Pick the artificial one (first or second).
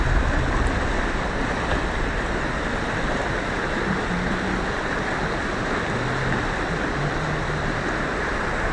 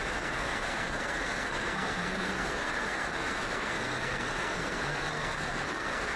second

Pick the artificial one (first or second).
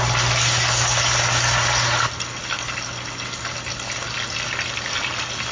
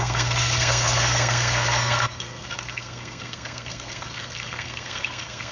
second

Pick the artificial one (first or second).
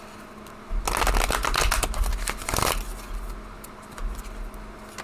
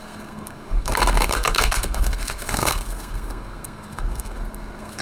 second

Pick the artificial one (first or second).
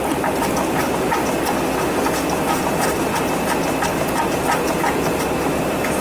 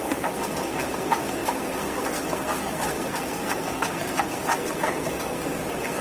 second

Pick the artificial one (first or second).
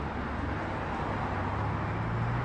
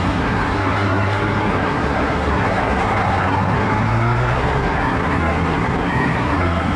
second